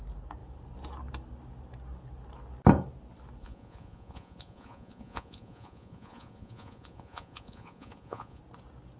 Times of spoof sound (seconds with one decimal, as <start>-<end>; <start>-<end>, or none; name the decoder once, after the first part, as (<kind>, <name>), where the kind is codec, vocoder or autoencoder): 3.4-8.4 (vocoder, Vocos)